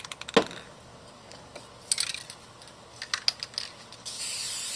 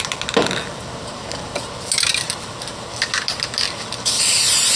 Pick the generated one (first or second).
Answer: second